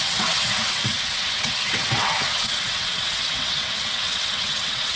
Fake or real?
fake